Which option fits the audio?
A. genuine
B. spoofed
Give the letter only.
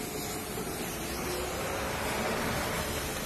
A